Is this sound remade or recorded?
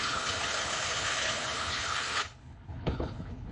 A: remade